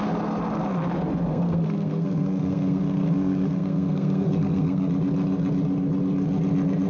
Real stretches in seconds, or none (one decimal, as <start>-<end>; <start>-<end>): 0.0-1.3; 4.9-6.9